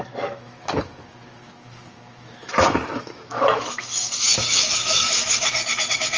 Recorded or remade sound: remade